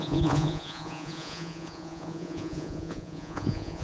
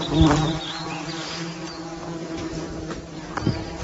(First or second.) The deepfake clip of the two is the first